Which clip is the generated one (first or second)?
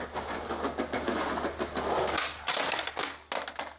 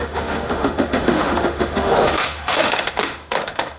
second